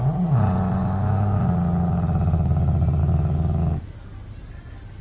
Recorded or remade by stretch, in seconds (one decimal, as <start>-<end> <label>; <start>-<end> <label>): 0.0-0.8 recorded; 0.8-1.4 remade; 1.4-3.0 recorded; 3.0-3.9 remade; 3.9-5.0 recorded